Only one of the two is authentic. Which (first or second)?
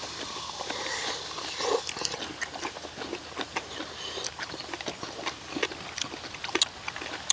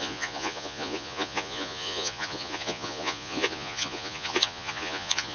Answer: first